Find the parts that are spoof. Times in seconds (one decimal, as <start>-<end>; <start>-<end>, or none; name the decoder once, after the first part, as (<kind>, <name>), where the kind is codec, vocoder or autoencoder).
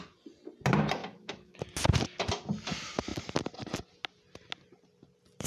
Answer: 1.0-1.6 (autoencoder, DAC-VAE)